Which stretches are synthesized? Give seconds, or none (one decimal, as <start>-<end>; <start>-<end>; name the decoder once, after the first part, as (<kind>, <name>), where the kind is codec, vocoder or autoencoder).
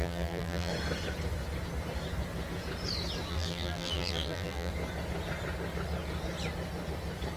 0.0-0.7 (vocoder, BigVGAN v2); 3.3-4.7